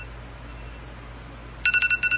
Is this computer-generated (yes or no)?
no